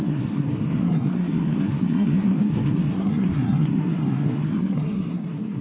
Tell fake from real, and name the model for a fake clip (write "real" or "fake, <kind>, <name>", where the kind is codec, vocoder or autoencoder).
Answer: fake, codec, SNAC